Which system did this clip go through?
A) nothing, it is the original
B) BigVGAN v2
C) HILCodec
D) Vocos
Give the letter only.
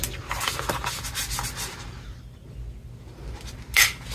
A